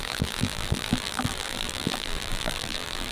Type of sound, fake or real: fake